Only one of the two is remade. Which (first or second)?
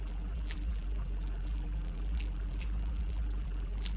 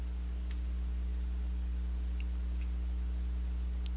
first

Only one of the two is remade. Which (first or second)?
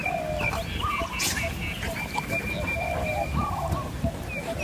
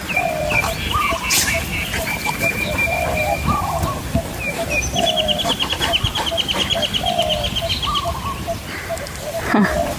second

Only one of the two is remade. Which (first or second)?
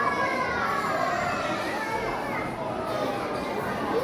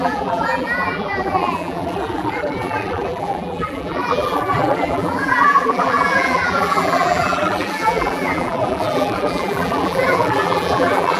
second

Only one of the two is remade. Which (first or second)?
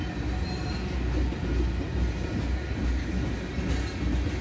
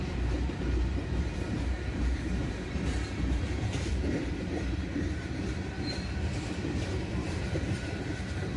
second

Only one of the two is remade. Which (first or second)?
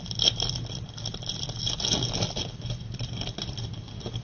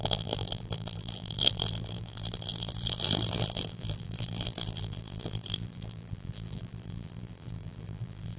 second